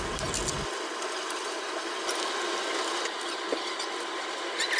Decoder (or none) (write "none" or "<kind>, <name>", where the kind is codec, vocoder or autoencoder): none